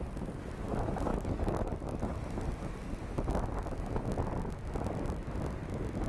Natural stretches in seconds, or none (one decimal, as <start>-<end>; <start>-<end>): 0.0-1.1; 2.0-6.1